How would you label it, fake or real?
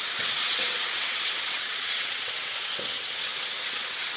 fake